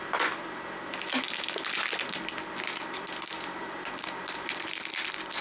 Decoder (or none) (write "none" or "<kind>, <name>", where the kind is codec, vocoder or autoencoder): none